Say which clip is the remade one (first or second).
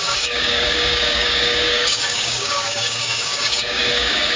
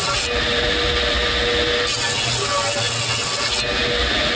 first